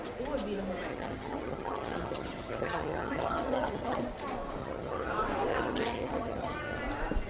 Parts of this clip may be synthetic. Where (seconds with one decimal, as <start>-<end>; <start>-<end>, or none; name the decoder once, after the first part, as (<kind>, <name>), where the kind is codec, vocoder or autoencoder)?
0.9-4.0 (vocoder, HiFi-GAN); 4.6-5.1; 5.5-6.8